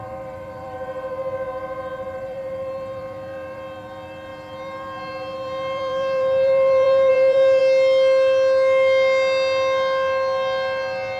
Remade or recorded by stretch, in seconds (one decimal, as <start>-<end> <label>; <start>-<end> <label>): 0.0-7.6 remade; 7.6-11.2 recorded